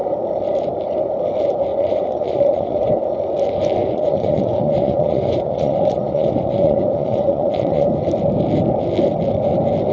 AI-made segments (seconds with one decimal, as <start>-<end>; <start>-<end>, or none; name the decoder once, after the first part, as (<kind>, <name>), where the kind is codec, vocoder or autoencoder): 1.7-2.9 (vocoder, Vocos); 3.8-7.9